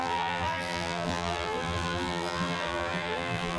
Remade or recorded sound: remade